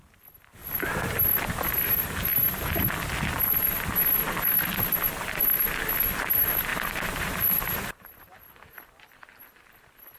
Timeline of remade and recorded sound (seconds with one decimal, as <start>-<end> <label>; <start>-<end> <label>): 0.0-6.7 recorded; 6.7-8.7 remade; 8.7-10.2 recorded